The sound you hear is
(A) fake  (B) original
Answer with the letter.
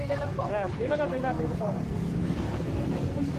A